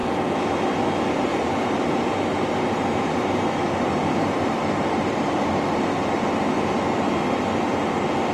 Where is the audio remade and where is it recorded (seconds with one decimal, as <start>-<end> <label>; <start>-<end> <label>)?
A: 0.0-1.3 recorded; 1.3-5.8 remade; 5.8-8.3 recorded